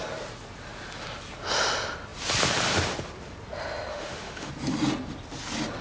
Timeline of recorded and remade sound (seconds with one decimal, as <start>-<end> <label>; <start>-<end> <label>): 0.0-3.9 recorded; 3.9-4.5 remade; 4.5-5.8 recorded